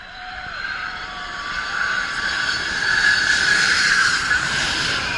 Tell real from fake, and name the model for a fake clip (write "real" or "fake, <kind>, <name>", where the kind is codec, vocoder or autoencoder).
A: fake, vocoder, BigVGAN v2